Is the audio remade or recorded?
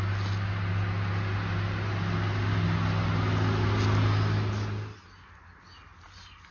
recorded